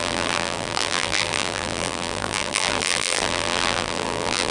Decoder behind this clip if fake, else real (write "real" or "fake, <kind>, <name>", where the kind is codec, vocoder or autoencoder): fake, vocoder, BigVGAN v2